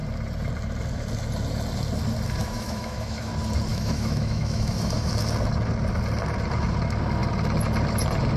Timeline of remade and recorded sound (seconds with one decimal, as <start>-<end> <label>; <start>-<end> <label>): 0.0-2.4 recorded; 2.4-3.3 remade; 3.3-3.7 recorded; 3.7-5.1 remade; 5.1-8.4 recorded